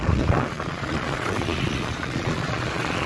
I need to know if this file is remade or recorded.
remade